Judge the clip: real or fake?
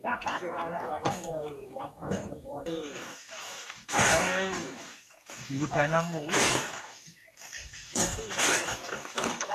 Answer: fake